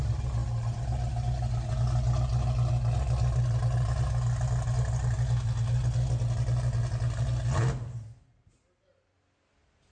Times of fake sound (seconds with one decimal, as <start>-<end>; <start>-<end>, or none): none